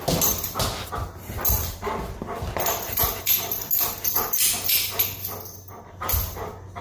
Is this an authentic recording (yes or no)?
yes